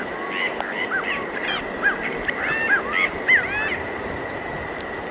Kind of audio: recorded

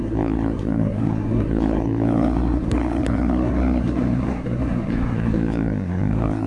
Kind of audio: remade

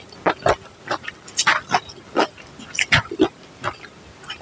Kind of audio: recorded